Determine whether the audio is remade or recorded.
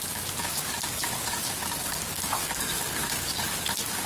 remade